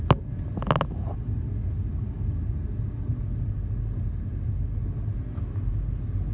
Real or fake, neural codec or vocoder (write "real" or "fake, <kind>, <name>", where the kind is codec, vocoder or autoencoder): real